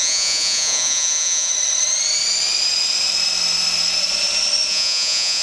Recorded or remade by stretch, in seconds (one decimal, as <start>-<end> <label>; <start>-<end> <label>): 0.0-1.5 remade; 1.5-4.7 recorded; 4.7-5.4 remade